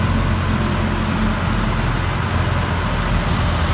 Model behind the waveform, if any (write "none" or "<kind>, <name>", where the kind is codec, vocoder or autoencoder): none